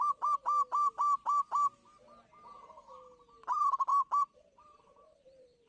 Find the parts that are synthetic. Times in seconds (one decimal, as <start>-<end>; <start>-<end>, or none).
3.9-5.7